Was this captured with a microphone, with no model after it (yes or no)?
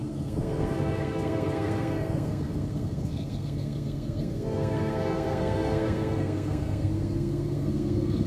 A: no